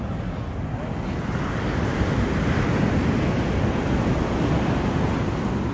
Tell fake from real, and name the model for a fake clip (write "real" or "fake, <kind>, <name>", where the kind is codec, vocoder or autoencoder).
real